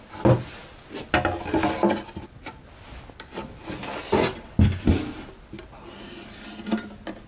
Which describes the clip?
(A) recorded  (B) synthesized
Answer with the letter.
A